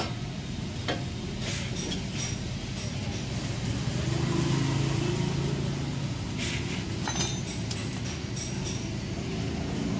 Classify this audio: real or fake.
real